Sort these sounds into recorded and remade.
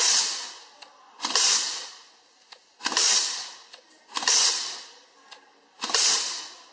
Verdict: recorded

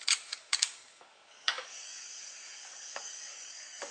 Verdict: remade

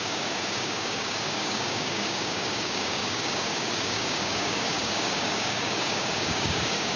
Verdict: remade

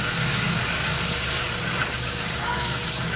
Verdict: remade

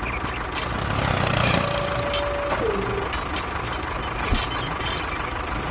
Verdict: recorded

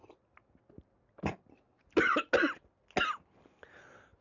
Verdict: recorded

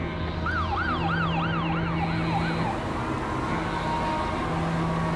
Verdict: recorded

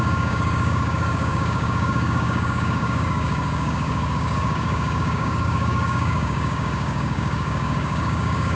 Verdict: remade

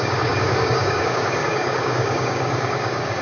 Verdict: remade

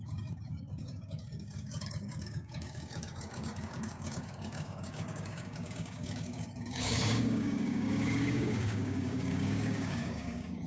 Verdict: remade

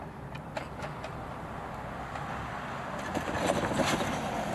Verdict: recorded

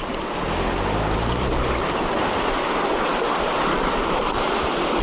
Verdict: recorded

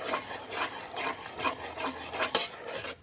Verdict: recorded